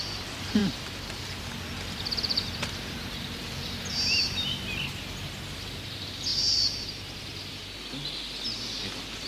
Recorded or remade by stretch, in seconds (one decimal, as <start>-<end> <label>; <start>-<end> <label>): 0.0-6.3 recorded; 6.3-7.4 remade; 7.4-9.3 recorded